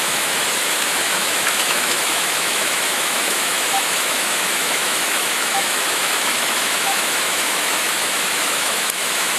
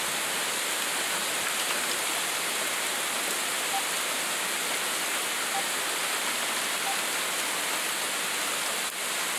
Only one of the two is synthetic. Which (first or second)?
first